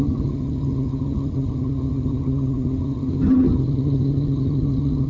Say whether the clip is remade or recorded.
remade